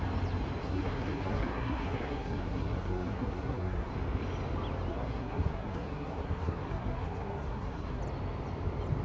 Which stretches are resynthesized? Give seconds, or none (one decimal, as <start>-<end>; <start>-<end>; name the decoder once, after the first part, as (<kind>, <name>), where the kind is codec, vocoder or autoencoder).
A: 0.6-3.9 (codec, SNAC); 4.9-8.0

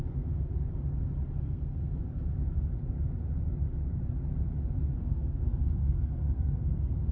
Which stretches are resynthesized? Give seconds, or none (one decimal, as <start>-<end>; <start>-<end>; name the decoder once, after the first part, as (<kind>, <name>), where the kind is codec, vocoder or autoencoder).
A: 0.0-0.5 (codec, SNAC); 1.4-2.0; 5.0-7.1

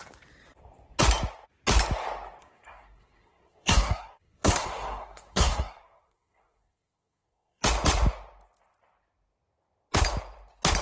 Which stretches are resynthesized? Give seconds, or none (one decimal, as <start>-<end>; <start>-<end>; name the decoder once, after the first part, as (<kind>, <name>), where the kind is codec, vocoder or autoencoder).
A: 2.4-7.6 (codec, SNAC)

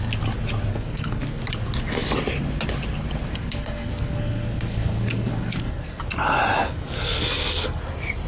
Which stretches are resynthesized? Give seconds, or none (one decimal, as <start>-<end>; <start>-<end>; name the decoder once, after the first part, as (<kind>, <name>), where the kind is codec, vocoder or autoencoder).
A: 0.7-1.4 (codec, SNAC); 3.3-6.0; 6.6-7.8

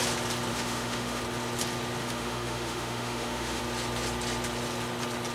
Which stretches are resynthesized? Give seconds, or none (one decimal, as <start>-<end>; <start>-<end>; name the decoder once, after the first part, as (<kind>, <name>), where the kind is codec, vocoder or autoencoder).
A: 0.5-1.2 (autoencoder, DAC-VAE); 2.0-3.6

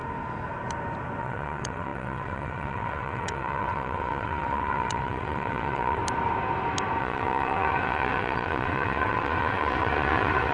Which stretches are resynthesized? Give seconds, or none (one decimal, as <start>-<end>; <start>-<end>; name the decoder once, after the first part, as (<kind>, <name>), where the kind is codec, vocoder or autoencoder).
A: 1.2-6.0 (vocoder, WaveNeXt); 7.0-10.5